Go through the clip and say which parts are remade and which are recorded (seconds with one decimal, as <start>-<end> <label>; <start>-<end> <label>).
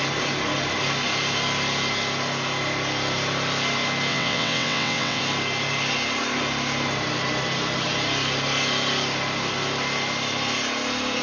0.0-4.1 recorded; 4.1-5.2 remade; 5.2-11.2 recorded